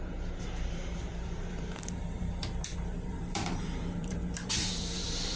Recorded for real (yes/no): no